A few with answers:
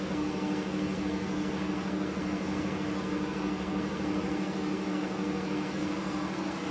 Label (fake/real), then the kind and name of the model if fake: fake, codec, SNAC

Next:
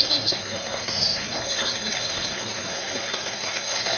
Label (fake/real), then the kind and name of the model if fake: fake, codec, SNAC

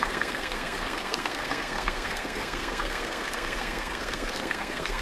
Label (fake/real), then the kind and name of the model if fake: fake, codec, SNAC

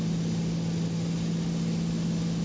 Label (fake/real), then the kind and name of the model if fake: real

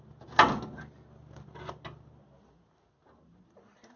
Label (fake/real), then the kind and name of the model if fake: real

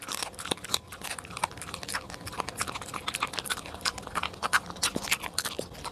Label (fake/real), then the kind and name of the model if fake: real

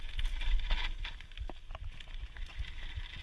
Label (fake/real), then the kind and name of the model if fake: real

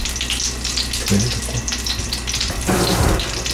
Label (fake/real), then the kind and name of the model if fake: real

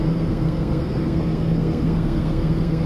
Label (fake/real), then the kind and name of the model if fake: fake, codec, SNAC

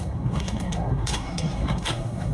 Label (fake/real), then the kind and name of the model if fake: fake, codec, SNAC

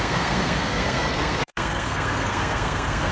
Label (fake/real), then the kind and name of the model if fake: fake, codec, SNAC